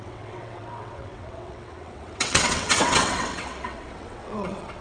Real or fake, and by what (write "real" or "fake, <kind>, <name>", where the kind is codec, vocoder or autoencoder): fake, vocoder, WaveNeXt